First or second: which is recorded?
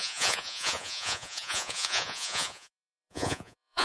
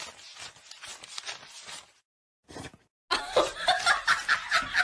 second